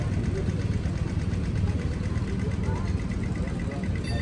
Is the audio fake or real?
real